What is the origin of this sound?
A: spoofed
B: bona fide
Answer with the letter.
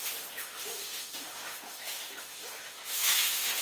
A